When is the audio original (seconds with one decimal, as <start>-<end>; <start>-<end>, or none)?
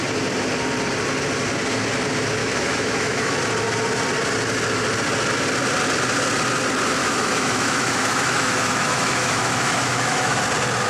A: 0.0-2.4; 3.4-7.0; 10.4-10.9